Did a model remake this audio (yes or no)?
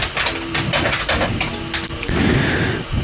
no